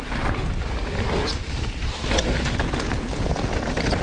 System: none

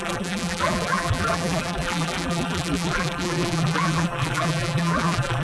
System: vocoder, BigVGAN v2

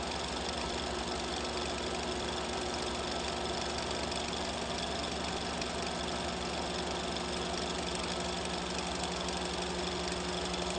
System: none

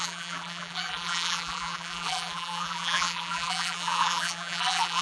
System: vocoder, BigVGAN v2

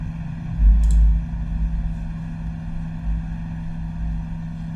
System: none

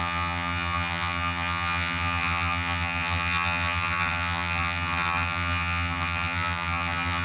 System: vocoder, HiFi-GAN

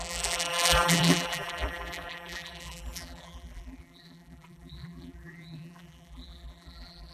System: vocoder, BigVGAN v2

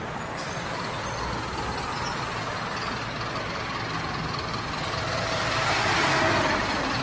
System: none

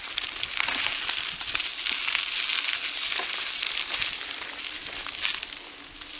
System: none